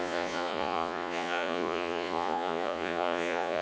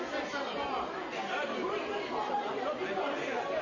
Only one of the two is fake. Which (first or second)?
first